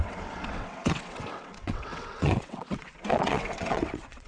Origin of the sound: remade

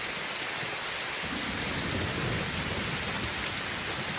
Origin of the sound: recorded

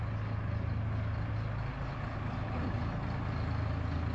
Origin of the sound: recorded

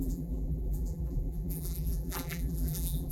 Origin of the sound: remade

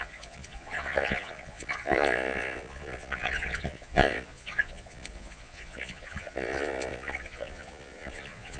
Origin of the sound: remade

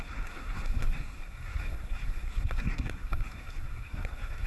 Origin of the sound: remade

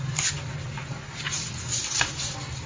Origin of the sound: recorded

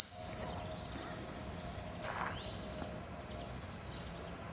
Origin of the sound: recorded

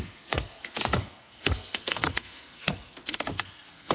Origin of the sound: remade